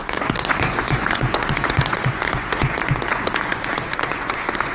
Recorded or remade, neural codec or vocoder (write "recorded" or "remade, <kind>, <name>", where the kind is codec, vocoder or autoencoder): remade, vocoder, Vocos